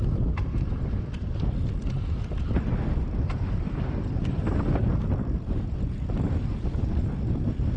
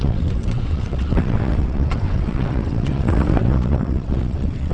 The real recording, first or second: first